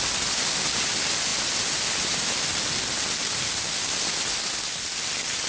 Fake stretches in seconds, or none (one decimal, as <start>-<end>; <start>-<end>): none